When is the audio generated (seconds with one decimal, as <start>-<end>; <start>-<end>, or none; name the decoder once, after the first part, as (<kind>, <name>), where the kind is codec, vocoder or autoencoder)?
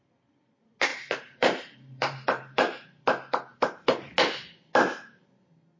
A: 0.9-3.0 (vocoder, BigVGAN v2); 3.5-4.1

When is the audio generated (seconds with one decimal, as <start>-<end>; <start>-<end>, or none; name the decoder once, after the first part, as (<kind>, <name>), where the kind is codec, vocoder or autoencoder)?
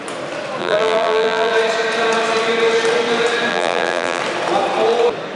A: 0.6-1.5 (vocoder, BigVGAN v2); 3.5-4.2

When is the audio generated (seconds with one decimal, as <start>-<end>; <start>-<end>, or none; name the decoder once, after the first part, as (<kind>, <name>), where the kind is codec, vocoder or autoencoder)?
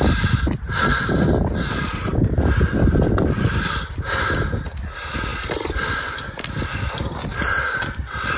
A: 0.0-8.4 (vocoder, BigVGAN v2)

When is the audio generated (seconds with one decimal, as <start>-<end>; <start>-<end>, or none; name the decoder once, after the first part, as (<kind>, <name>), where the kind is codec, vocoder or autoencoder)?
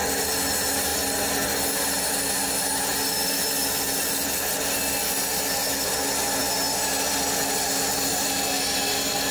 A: none